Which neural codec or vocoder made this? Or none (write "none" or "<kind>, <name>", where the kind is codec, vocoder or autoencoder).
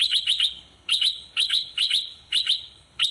codec, HILCodec